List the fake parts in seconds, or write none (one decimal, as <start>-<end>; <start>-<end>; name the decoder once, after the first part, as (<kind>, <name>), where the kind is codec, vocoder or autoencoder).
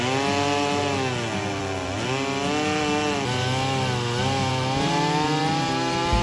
none